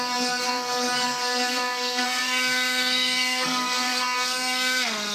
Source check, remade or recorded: remade